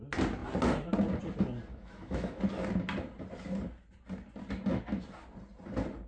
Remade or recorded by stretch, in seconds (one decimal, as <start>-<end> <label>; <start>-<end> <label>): 0.0-1.7 recorded; 1.7-2.4 remade; 2.4-6.1 recorded